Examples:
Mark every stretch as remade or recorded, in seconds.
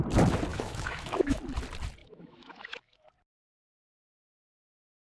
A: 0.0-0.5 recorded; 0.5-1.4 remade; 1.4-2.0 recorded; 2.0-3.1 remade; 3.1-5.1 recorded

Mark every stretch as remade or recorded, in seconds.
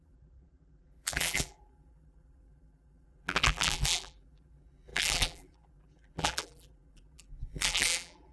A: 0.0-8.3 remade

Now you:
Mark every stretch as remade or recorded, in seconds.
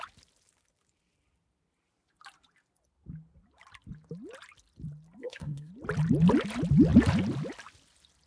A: 0.0-5.2 recorded; 5.2-5.7 remade; 5.7-8.3 recorded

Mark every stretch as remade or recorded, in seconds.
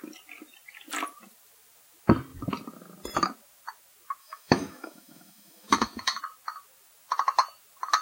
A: 0.0-4.2 recorded; 4.2-6.2 remade; 6.2-8.0 recorded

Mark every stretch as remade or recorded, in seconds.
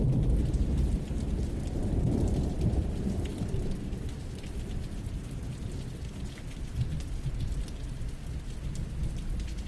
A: 0.0-9.7 recorded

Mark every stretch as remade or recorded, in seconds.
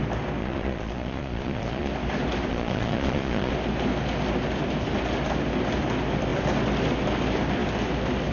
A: 0.0-0.4 recorded; 0.4-1.9 remade; 1.9-2.5 recorded; 2.5-3.5 remade; 3.5-8.3 recorded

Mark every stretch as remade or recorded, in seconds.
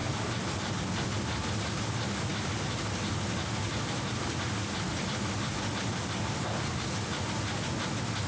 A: 0.0-8.3 recorded